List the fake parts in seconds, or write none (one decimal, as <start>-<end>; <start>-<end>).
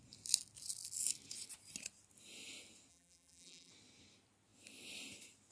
2.9-3.7